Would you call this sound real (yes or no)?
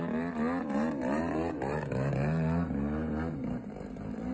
yes